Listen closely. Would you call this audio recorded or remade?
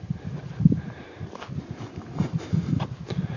recorded